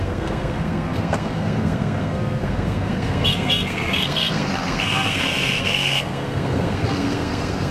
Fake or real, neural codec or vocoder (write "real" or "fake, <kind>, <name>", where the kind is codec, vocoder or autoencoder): fake, codec, SNAC